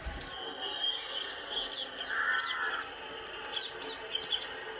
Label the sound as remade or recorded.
recorded